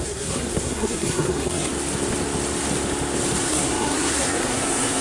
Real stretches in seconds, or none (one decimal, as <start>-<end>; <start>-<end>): 1.7-3.4